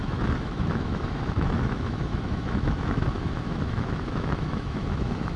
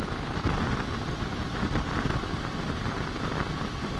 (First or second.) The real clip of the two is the second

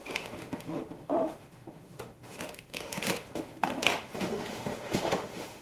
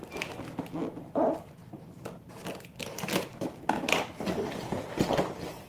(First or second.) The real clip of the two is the second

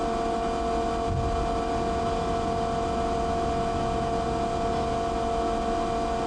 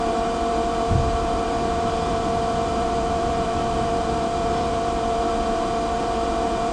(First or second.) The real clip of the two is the first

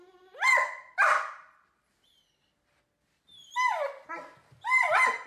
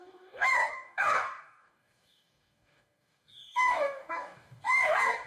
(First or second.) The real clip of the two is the first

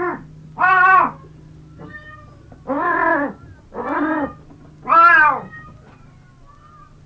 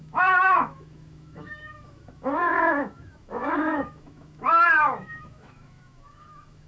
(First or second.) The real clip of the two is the first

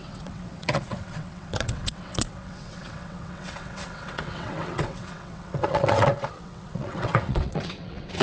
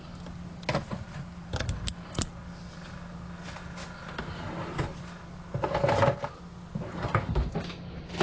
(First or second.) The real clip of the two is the second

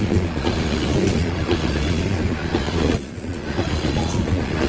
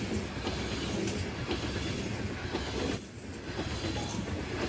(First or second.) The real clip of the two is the second